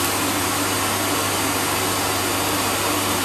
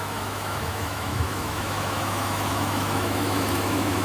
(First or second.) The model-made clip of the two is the second